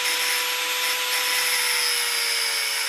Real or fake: real